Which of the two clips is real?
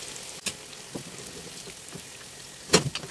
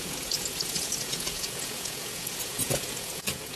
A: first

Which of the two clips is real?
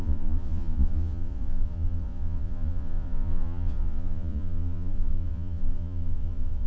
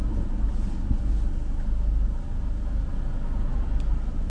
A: second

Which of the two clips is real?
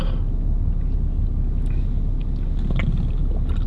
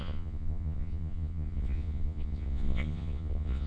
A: first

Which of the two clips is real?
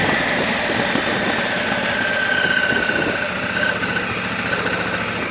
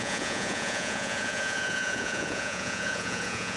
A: first